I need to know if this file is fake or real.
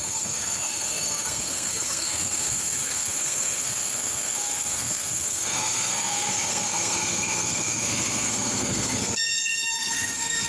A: fake